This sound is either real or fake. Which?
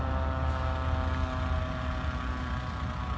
real